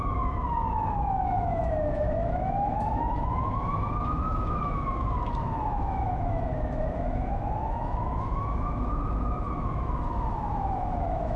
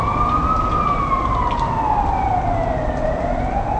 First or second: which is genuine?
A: second